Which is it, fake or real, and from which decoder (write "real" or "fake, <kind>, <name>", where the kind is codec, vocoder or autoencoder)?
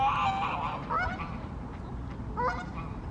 real